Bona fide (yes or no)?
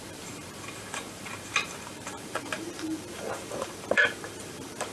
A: no